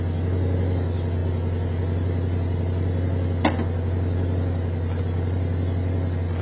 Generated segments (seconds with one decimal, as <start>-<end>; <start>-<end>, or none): none